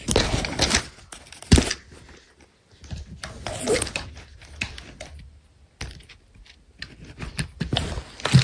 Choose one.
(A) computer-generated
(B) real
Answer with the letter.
B